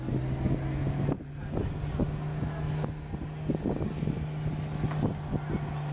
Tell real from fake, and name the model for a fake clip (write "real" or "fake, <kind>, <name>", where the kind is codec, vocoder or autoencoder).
real